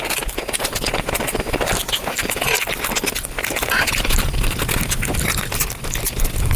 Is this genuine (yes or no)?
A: yes